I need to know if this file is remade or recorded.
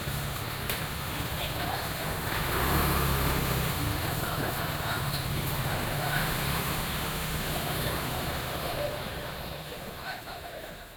remade